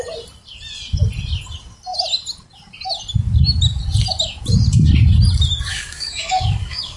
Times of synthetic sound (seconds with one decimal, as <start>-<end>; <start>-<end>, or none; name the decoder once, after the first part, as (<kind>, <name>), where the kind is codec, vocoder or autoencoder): 5.7-7.0 (codec, DAC)